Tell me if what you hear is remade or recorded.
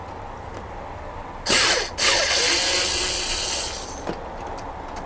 recorded